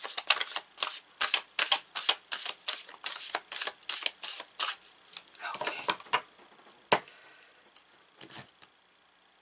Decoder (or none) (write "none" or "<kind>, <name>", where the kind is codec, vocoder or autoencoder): none